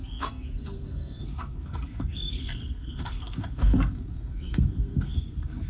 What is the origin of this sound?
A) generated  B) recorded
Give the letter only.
A